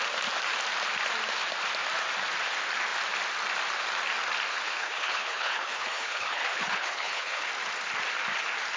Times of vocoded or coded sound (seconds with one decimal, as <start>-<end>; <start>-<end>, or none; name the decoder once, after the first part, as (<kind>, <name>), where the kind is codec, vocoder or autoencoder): 4.5-7.5 (codec, HILCodec)